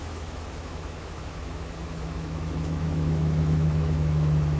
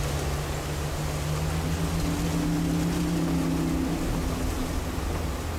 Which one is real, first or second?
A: second